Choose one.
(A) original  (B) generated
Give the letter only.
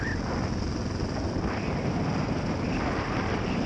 A